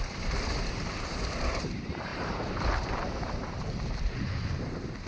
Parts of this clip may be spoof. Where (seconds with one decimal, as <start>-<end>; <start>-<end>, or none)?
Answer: 0.0-5.1